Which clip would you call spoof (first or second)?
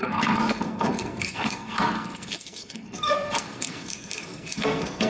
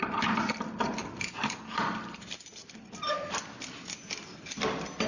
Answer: first